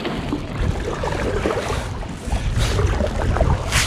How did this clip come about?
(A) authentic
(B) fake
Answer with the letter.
A